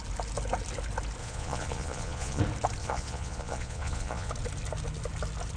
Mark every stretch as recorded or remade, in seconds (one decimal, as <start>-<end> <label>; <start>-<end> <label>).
0.0-1.2 recorded; 1.2-2.4 remade; 2.4-2.8 recorded; 2.8-4.3 remade; 4.3-5.6 recorded